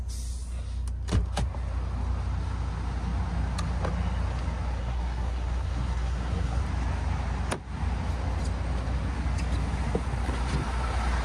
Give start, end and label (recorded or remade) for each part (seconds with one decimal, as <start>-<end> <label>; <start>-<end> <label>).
0.0-4.8 recorded; 4.8-6.6 remade; 6.6-11.2 recorded